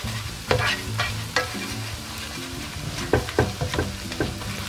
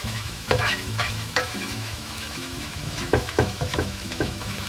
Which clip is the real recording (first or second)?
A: first